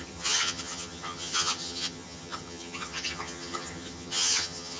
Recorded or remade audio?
remade